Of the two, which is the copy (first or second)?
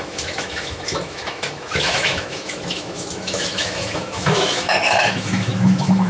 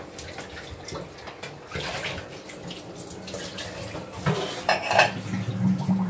first